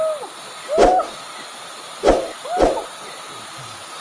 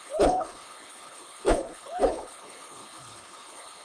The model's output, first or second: second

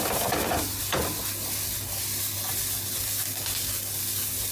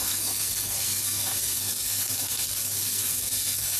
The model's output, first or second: second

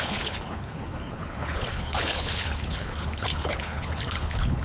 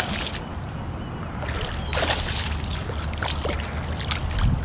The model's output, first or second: first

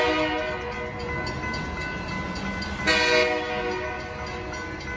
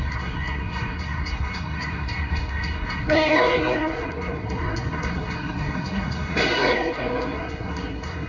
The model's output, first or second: second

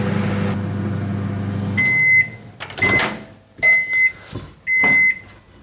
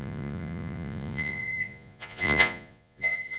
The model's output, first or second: second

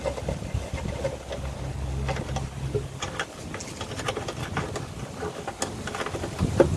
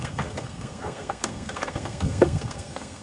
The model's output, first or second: second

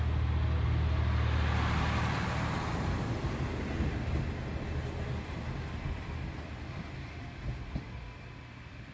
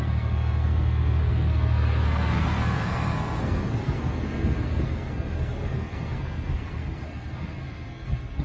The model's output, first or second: second